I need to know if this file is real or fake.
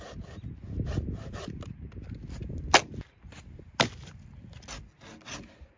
real